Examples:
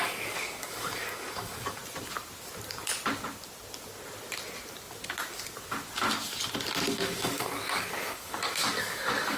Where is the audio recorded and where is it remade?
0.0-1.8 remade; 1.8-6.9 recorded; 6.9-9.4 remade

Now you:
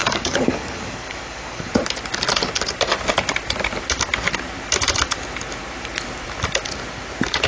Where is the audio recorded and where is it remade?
0.0-1.7 remade; 1.7-7.5 recorded

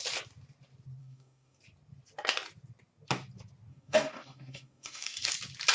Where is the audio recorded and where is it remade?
0.0-1.0 recorded; 1.0-1.6 remade; 1.6-3.7 recorded; 3.7-5.3 remade; 5.3-5.7 recorded

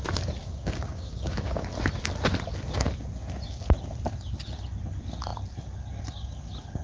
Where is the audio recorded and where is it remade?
0.0-0.4 recorded; 0.4-1.7 remade; 1.7-6.8 recorded

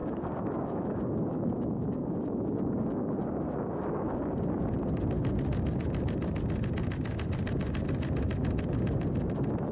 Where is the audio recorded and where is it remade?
0.0-4.4 remade; 4.4-9.7 recorded

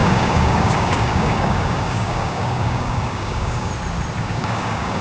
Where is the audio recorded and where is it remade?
0.0-3.7 remade; 3.7-4.2 recorded; 4.2-5.0 remade